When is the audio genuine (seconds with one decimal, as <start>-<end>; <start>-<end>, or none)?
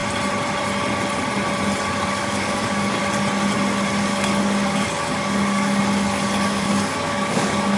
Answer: 0.0-2.1; 3.0-4.0